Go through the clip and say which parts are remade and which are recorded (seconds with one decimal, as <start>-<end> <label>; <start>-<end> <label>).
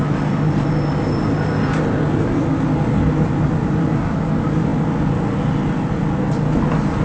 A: 0.0-7.0 recorded